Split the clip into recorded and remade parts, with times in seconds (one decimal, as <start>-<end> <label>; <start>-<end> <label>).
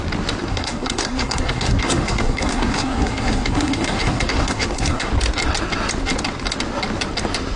0.0-0.5 recorded; 0.5-5.1 remade; 5.1-7.6 recorded